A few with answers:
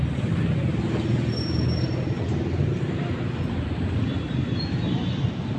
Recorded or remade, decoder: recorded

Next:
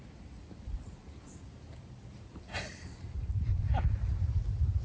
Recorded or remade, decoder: remade, vocoder, BigVGAN v2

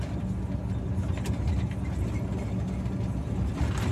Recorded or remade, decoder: recorded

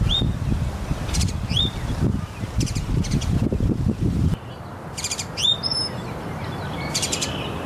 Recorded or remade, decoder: recorded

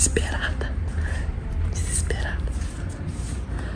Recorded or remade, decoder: remade, vocoder, BigVGAN v2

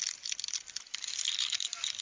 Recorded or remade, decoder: recorded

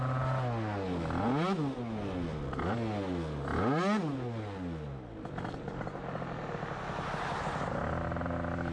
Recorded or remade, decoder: recorded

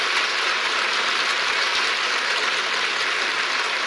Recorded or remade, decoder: recorded